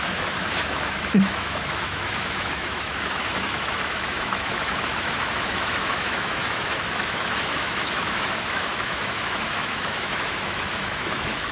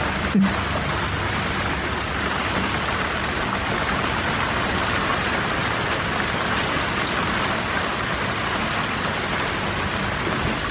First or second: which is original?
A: second